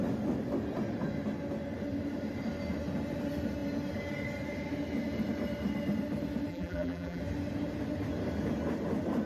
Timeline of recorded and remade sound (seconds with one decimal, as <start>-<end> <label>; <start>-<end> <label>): 0.0-6.5 recorded; 6.5-7.2 remade; 7.2-9.3 recorded